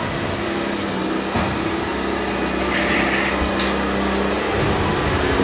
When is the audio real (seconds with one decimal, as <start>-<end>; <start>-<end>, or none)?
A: 0.0-5.4